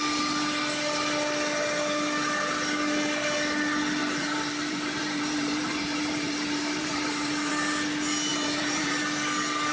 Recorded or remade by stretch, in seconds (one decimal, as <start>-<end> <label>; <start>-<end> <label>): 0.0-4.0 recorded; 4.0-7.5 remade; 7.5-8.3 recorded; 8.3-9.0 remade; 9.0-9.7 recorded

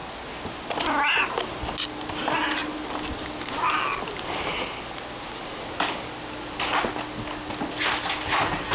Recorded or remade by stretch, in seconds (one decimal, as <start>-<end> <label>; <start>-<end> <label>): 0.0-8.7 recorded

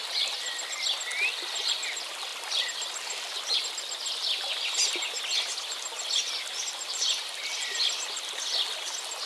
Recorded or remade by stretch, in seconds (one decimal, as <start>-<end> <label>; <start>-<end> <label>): 0.0-9.3 recorded

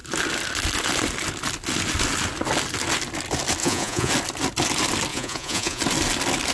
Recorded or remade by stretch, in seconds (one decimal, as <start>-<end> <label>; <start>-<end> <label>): 0.0-3.6 recorded; 3.6-4.1 remade; 4.1-5.1 recorded; 5.1-5.8 remade; 5.8-6.5 recorded

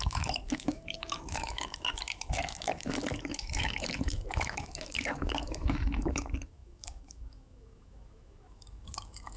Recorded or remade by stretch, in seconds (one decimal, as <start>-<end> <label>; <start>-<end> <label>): 0.0-9.4 remade

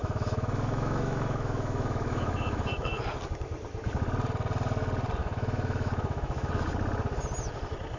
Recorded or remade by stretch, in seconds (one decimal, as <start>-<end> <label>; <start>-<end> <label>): 0.0-3.0 remade; 3.0-5.2 recorded; 5.2-6.5 remade; 6.5-8.0 recorded

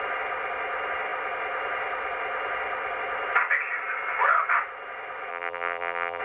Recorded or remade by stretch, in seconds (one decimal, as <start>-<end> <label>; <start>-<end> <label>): 0.0-5.3 recorded; 5.3-6.2 remade